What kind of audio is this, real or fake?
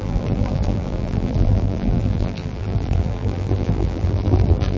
fake